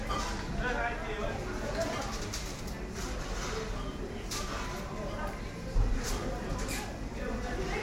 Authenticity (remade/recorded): recorded